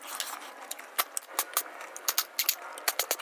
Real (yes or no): yes